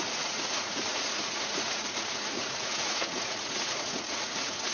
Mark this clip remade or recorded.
remade